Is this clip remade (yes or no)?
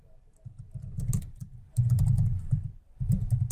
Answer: no